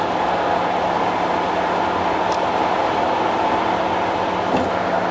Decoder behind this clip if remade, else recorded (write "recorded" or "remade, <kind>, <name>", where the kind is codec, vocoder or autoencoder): recorded